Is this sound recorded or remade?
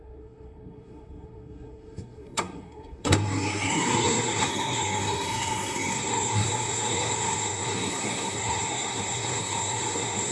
remade